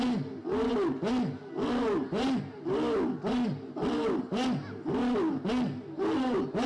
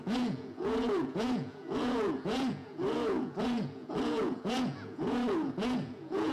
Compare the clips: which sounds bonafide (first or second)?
first